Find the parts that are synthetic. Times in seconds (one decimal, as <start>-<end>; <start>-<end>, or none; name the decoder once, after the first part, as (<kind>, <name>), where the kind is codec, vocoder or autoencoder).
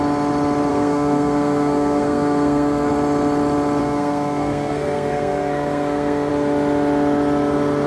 0.7-2.9 (codec, SNAC); 3.8-6.3